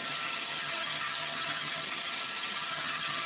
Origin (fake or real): fake